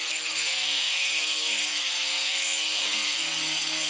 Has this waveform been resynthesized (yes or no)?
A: yes